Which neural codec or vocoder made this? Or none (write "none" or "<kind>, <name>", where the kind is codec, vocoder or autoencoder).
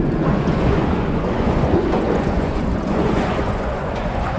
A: vocoder, Vocos